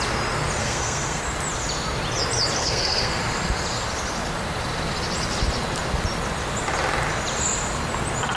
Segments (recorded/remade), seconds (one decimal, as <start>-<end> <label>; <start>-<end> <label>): 0.0-0.6 recorded; 0.6-1.2 remade; 1.2-2.6 recorded; 2.6-3.2 remade; 3.2-8.4 recorded

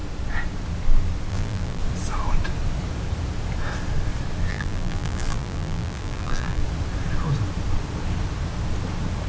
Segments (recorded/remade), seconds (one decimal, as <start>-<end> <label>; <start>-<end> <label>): 0.0-1.3 recorded; 1.3-1.8 remade; 1.8-4.5 recorded; 4.5-6.6 remade; 6.6-9.3 recorded

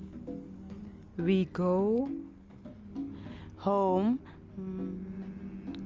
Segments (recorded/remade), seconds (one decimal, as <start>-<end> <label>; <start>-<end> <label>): 0.0-1.1 remade; 1.1-2.0 recorded; 2.0-2.7 remade; 2.7-5.9 recorded